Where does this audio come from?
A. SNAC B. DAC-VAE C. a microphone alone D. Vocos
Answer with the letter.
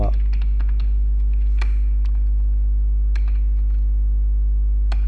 C